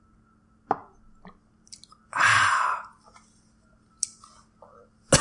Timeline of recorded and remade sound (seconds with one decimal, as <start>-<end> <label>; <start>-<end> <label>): 0.0-5.2 recorded